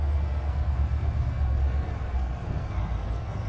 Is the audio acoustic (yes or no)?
no